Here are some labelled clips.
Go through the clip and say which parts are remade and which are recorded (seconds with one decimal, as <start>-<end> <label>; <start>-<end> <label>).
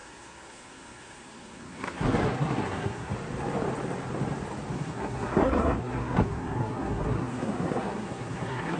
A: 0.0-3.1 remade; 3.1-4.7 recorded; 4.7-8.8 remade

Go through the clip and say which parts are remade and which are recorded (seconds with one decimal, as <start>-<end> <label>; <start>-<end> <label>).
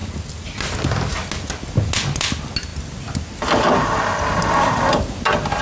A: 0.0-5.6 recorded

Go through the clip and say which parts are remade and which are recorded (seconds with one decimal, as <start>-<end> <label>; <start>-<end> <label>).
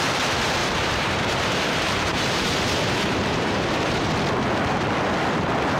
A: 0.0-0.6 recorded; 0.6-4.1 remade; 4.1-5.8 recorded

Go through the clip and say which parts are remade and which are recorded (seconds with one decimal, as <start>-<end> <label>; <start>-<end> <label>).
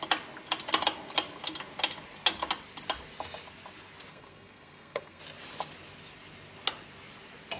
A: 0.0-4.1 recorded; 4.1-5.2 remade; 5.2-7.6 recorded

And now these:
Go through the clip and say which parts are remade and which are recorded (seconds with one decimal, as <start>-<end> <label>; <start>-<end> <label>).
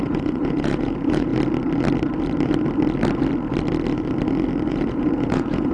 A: 0.0-1.3 remade; 1.3-4.7 recorded; 4.7-5.7 remade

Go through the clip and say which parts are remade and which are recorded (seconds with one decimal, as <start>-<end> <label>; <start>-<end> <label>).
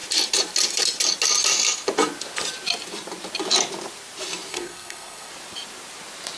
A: 0.0-4.5 recorded; 4.5-5.3 remade; 5.3-6.4 recorded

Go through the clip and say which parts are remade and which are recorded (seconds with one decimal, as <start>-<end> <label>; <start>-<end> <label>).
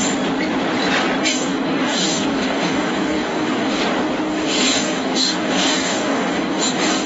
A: 0.0-1.2 recorded; 1.2-3.8 remade; 3.8-4.3 recorded; 4.3-7.1 remade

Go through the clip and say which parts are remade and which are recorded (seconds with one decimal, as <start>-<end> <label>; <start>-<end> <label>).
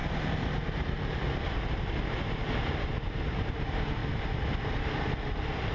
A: 0.0-4.0 remade; 4.0-5.0 recorded; 5.0-5.7 remade